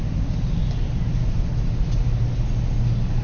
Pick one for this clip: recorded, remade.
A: recorded